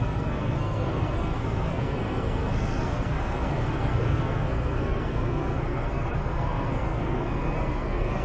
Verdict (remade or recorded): remade